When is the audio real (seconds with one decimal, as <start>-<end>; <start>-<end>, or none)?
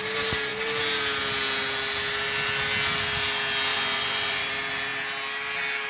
0.0-3.7; 4.5-5.9